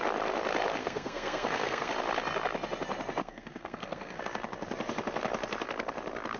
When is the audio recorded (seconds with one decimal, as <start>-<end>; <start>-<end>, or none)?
0.0-0.8; 1.9-3.2; 4.2-6.4

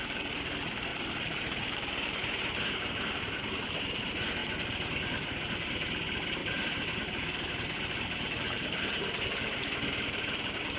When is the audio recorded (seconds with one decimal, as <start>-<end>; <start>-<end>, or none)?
0.0-0.9; 3.2-4.4; 5.4-6.4; 9.2-10.8

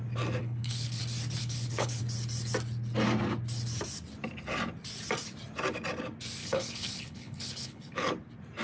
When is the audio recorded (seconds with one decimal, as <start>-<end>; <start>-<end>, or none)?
0.0-0.4; 1.0-1.4; 2.0-6.4; 8.1-8.6